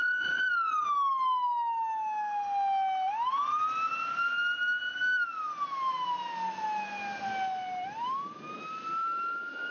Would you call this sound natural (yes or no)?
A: yes